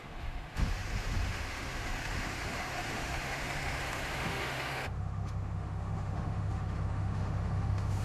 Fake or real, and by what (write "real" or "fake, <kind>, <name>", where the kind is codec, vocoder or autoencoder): fake, autoencoder, DAC-VAE